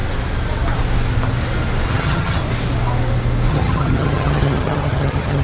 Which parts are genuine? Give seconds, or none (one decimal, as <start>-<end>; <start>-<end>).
0.0-1.9; 2.4-3.5